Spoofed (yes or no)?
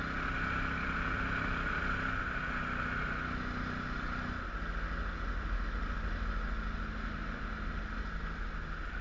no